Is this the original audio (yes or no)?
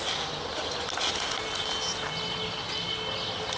yes